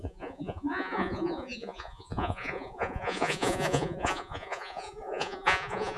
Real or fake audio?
fake